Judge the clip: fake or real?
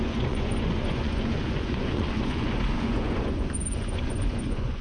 fake